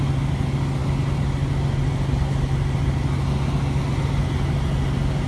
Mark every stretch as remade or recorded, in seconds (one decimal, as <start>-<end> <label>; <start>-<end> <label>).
0.0-5.3 recorded